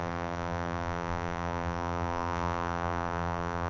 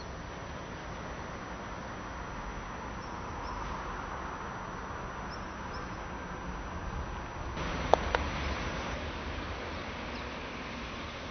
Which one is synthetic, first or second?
first